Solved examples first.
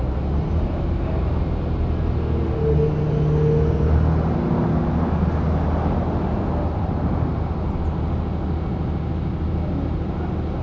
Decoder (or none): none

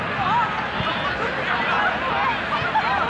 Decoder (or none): none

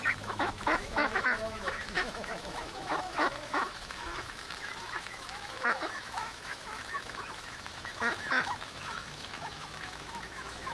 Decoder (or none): autoencoder, DAC-VAE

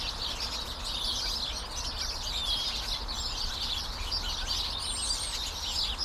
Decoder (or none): none